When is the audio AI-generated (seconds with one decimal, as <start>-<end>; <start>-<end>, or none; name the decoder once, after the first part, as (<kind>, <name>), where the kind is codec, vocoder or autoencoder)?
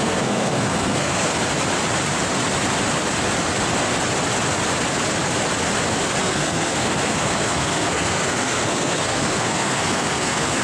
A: 0.0-1.3 (codec, SNAC); 6.2-10.6